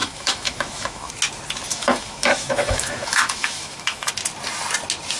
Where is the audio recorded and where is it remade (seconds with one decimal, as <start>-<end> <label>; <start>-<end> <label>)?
0.0-1.1 remade; 1.1-1.7 recorded; 1.7-4.1 remade; 4.1-5.2 recorded